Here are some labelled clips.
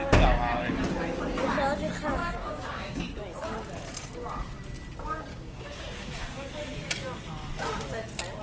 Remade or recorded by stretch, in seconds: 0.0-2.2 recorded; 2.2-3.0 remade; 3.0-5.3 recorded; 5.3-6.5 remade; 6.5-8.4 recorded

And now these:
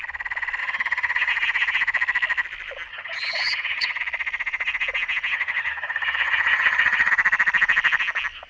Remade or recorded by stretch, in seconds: 0.0-0.6 recorded; 0.6-1.3 remade; 1.3-2.9 recorded; 2.9-4.0 remade; 4.0-5.3 recorded; 5.3-7.1 remade; 7.1-8.5 recorded

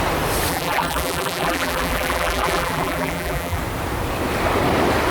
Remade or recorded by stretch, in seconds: 0.0-0.5 recorded; 0.5-3.6 remade; 3.6-5.1 recorded

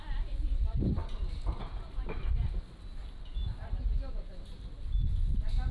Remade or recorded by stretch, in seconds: 0.0-5.7 recorded